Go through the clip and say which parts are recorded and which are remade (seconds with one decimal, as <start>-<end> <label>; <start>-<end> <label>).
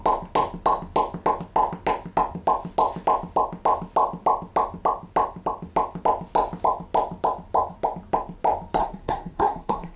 0.0-8.8 recorded; 8.8-10.0 remade